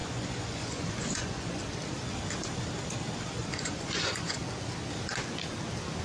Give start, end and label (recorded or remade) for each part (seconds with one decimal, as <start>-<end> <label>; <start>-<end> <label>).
0.0-1.6 remade; 1.6-3.4 recorded; 3.4-4.4 remade; 4.4-6.0 recorded